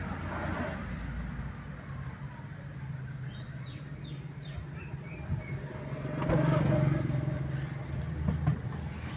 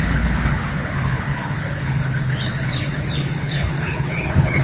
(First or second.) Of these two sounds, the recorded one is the first